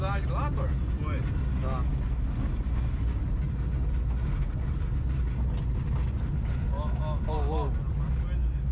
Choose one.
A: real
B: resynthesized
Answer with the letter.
A